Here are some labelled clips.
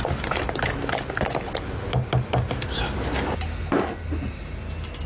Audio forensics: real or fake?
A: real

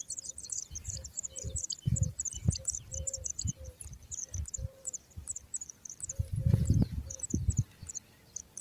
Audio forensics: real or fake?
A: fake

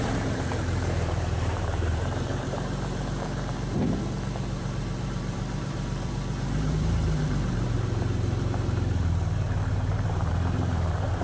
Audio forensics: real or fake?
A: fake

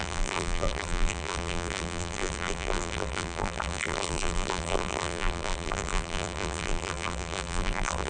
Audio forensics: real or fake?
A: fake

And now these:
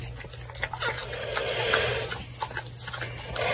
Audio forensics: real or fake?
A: real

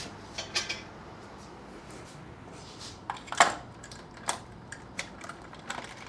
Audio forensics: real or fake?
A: fake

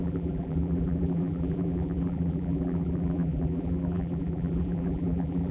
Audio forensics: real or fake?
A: fake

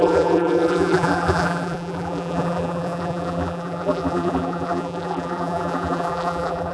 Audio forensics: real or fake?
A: fake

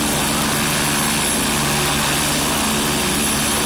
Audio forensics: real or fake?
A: real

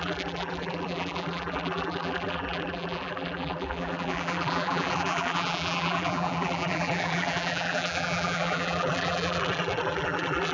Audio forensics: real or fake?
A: fake